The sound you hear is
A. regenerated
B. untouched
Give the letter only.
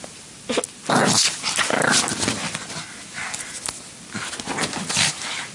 B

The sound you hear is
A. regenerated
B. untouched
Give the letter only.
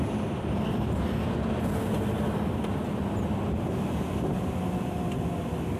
B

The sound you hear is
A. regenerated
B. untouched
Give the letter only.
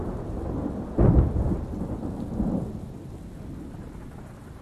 B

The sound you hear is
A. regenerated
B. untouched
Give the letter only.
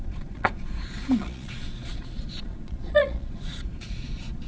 A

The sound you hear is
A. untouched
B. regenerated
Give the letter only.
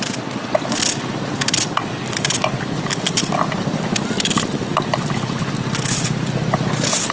A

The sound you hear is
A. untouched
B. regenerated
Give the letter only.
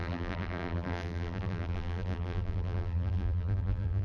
B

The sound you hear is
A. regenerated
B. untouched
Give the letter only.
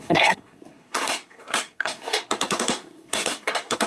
A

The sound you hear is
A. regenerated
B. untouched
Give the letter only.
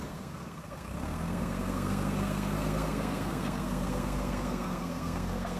A